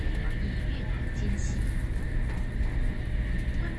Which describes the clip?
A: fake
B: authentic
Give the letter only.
B